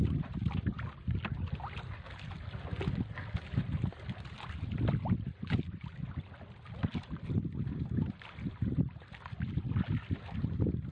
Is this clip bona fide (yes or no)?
yes